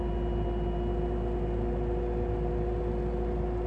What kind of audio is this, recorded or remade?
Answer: recorded